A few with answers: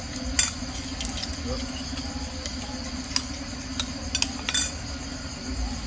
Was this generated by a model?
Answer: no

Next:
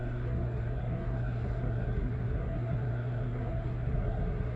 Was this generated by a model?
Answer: yes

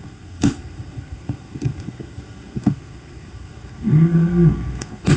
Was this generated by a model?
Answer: yes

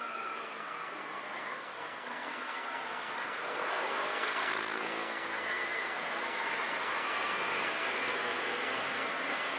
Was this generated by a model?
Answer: yes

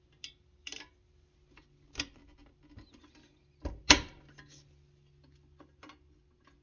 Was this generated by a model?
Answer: no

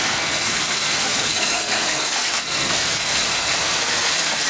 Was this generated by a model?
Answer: yes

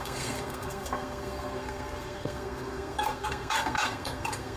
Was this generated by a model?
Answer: yes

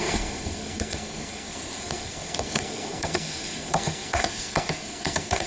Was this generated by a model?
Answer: yes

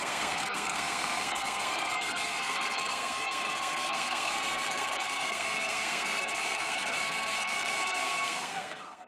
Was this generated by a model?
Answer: yes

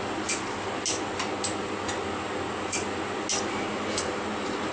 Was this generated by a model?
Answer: no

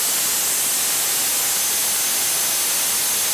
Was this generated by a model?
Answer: no